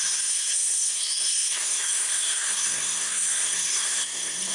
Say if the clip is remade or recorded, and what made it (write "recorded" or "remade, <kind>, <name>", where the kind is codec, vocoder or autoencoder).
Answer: remade, codec, SNAC